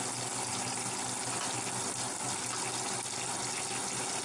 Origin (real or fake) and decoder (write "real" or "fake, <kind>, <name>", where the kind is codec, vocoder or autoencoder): real